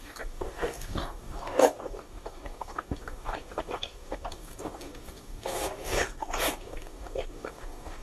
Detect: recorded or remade remade